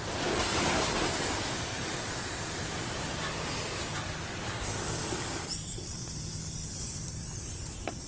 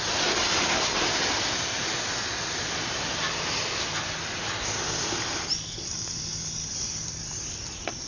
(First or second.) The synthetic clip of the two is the first